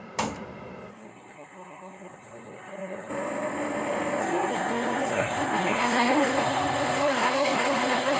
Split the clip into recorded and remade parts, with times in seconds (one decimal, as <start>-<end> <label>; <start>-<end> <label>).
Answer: 0.0-0.9 recorded; 0.9-3.1 remade; 3.1-4.2 recorded; 4.2-8.2 remade